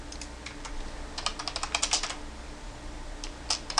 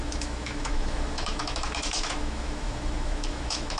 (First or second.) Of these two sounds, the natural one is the first